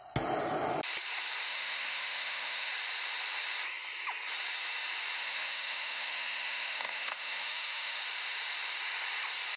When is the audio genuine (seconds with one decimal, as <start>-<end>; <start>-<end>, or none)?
0.0-1.5; 2.7-5.2; 8.0-9.6

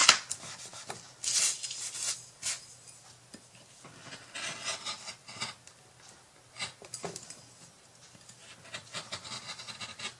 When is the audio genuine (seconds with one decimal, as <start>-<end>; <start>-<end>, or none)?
0.0-10.2

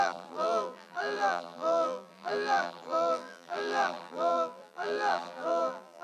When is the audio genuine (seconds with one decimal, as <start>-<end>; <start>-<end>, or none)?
none

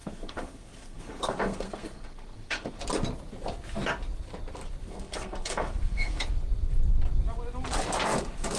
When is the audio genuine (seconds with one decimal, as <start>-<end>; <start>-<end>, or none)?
2.8-4.8; 6.2-8.6

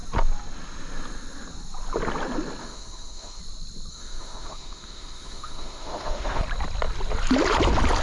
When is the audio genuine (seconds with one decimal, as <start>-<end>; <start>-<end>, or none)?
0.0-2.6; 3.4-3.9; 6.4-8.0

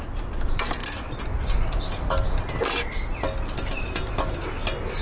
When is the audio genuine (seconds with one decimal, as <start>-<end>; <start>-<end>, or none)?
0.0-5.0

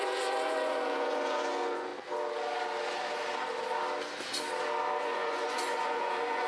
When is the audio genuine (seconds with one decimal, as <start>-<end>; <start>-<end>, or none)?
1.9-5.0

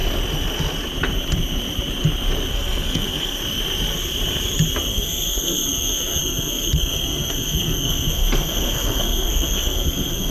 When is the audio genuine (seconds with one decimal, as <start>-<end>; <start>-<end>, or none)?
0.0-2.5; 3.4-4.9